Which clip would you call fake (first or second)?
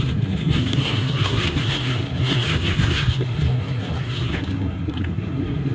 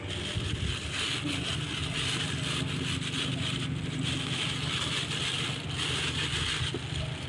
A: first